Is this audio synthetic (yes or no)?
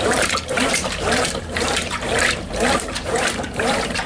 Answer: yes